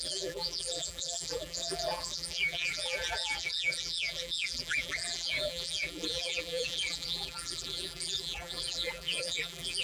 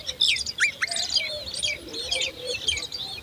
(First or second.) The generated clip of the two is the first